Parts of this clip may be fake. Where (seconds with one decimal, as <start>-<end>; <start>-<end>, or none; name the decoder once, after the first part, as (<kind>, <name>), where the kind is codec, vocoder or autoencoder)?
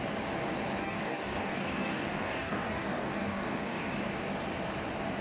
0.8-3.9 (codec, DAC)